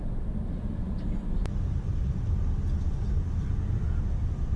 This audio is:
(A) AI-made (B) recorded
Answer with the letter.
B